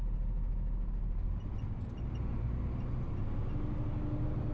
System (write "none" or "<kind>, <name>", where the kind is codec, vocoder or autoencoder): none